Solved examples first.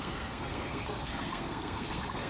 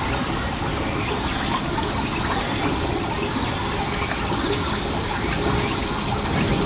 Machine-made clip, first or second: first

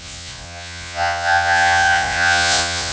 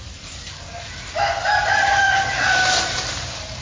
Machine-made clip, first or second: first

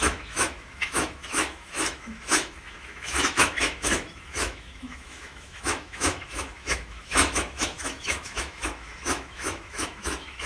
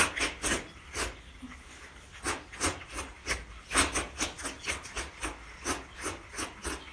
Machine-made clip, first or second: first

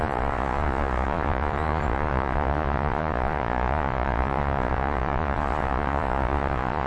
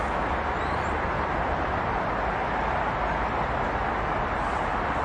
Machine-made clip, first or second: first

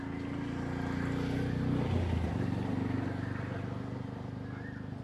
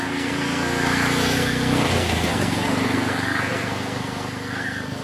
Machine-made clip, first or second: second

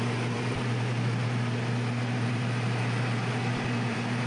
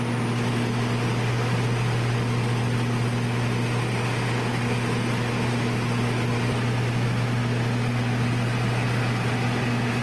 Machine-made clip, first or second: first